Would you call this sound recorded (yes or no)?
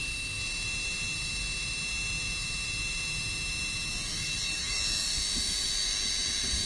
no